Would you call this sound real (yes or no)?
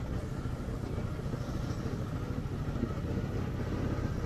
yes